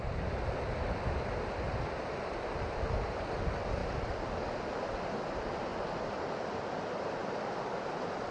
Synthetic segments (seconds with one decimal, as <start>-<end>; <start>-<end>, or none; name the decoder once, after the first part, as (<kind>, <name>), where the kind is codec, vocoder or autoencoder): none